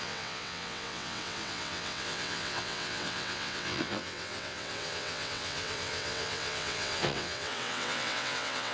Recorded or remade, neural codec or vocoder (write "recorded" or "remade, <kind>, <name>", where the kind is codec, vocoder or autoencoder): remade, vocoder, WaveNeXt